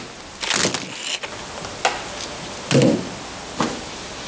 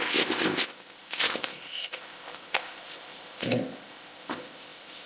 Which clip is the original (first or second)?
first